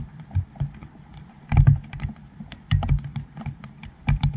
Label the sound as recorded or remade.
remade